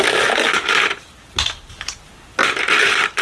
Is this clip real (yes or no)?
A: yes